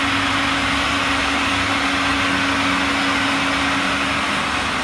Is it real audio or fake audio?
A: real